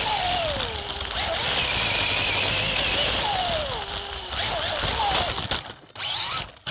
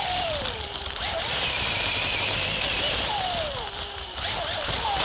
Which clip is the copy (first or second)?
second